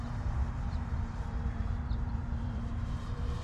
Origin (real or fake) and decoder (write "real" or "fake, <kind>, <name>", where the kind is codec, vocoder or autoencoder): fake, vocoder, BigVGAN v2